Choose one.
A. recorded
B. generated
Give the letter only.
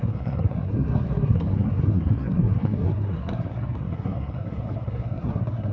B